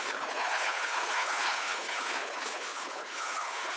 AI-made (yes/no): yes